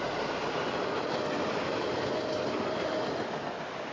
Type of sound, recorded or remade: recorded